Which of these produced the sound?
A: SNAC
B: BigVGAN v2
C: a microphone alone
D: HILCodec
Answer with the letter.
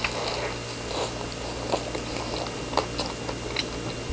C